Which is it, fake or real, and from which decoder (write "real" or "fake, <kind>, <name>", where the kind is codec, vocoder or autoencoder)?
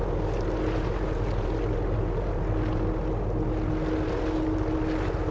real